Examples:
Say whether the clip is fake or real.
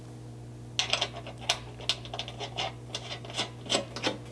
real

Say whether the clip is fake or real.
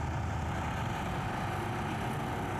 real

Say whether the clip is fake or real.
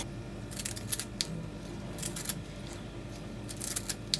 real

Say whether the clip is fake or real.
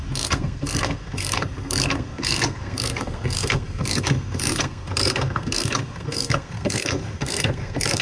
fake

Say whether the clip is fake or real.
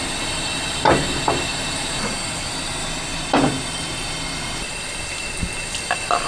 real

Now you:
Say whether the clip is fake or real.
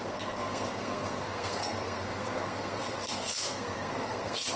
fake